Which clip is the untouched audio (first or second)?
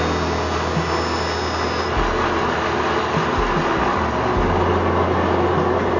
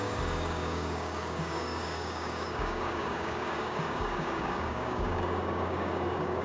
first